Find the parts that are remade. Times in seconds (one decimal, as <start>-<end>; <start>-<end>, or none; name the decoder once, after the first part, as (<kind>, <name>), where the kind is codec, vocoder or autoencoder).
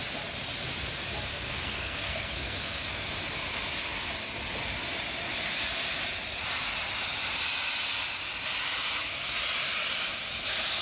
1.3-3.1 (codec, SNAC)